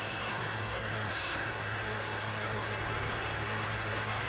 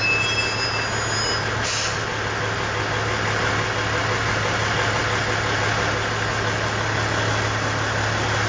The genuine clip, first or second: second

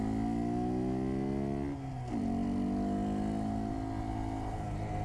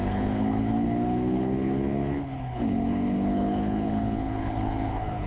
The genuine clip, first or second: first